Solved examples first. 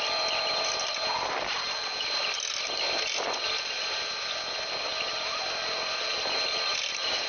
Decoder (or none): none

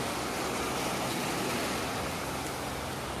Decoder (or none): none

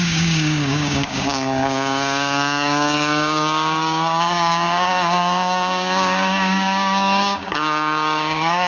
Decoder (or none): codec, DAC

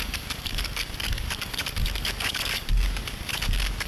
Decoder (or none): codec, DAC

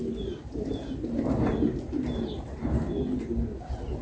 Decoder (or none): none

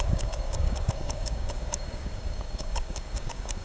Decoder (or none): codec, DAC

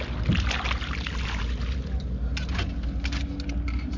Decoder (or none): none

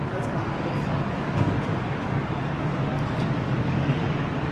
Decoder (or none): codec, DAC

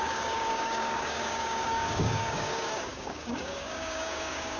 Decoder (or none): codec, DAC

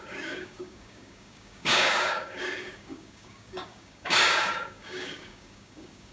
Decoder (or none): codec, DAC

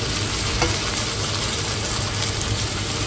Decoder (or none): none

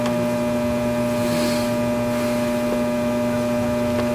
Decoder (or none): none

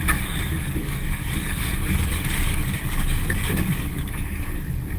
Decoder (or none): codec, DAC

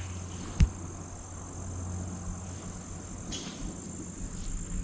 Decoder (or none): none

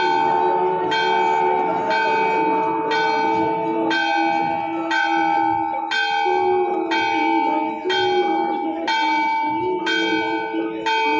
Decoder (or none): none